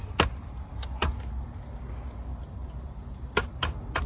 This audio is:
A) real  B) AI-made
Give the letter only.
A